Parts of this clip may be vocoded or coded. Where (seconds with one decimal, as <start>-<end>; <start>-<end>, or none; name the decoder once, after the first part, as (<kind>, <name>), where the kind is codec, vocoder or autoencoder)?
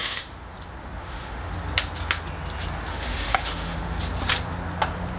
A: 0.0-0.5 (autoencoder, DAC-VAE); 1.0-1.5; 2.9-4.0